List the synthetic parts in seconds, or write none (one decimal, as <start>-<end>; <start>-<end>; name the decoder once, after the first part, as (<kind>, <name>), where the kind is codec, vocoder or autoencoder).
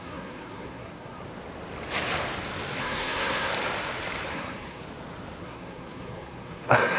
0.0-1.2 (codec, SNAC); 2.8-3.5; 4.3-4.8; 5.4-7.0